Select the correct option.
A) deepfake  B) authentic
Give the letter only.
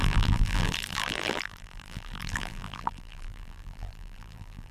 A